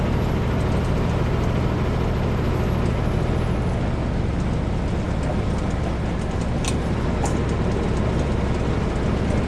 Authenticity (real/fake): real